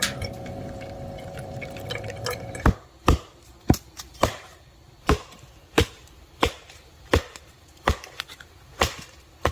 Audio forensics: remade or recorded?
remade